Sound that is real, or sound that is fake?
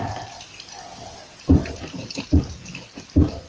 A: real